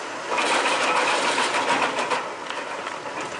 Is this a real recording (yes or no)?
yes